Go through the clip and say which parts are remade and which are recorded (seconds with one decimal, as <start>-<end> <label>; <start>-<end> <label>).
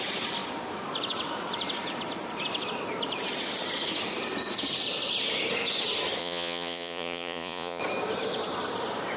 0.0-6.2 recorded; 6.2-7.8 remade; 7.8-9.2 recorded